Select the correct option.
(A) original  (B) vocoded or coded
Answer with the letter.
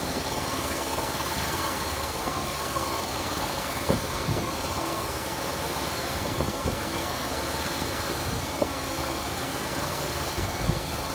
B